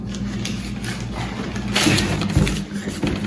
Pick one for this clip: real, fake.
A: real